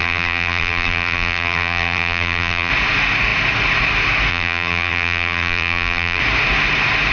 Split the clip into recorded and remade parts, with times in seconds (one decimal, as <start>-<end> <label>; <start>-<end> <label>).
0.0-2.7 remade; 2.7-4.3 recorded; 4.3-6.2 remade; 6.2-7.1 recorded

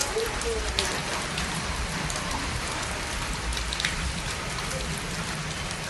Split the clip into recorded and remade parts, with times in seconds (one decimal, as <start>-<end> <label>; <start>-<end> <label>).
0.0-0.7 remade; 0.7-1.1 recorded; 1.1-2.9 remade; 2.9-5.9 recorded

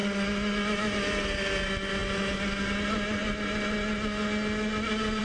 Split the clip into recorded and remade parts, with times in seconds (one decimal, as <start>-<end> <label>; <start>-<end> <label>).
0.0-5.2 recorded

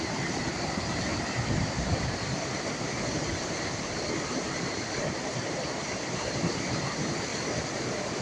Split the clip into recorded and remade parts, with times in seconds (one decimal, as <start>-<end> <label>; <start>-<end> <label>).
0.0-7.3 remade; 7.3-8.2 recorded